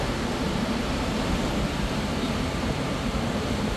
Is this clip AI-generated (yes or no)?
yes